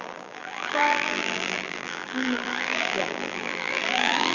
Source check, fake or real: fake